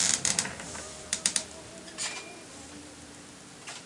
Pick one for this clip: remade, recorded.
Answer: remade